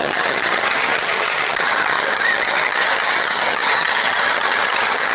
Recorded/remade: remade